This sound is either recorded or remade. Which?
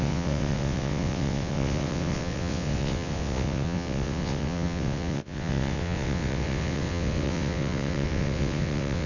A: remade